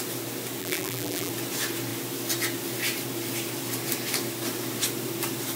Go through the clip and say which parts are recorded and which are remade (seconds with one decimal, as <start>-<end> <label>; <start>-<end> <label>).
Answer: 0.0-0.6 recorded; 0.6-1.3 remade; 1.3-5.6 recorded